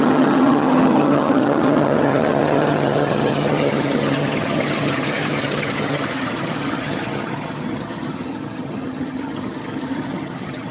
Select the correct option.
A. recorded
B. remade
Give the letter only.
B